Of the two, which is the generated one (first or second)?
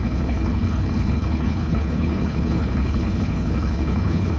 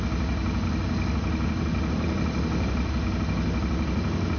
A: first